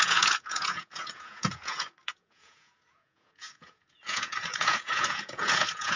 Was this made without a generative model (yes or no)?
no